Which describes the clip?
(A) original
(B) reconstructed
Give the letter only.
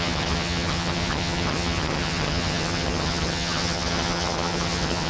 B